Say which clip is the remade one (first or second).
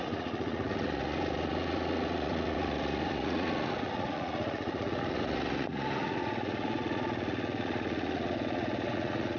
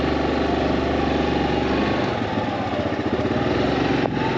first